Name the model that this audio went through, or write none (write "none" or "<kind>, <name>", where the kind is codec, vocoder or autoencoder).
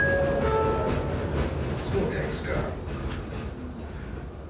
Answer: none